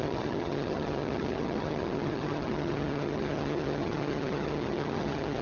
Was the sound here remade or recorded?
remade